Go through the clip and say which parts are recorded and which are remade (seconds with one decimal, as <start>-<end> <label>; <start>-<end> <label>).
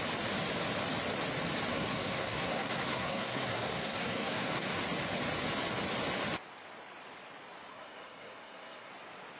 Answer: 0.0-1.7 recorded; 1.7-4.8 remade; 4.8-7.7 recorded; 7.7-8.9 remade; 8.9-9.4 recorded